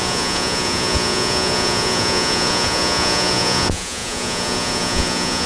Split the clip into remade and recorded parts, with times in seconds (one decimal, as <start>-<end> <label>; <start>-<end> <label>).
0.0-5.5 remade